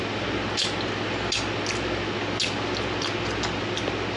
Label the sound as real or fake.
real